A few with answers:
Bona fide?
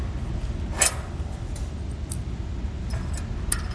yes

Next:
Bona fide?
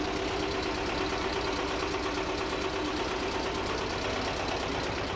yes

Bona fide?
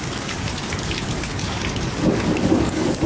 no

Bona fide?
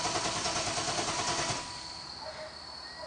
yes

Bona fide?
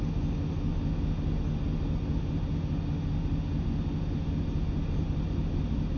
yes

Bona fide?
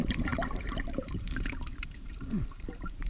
no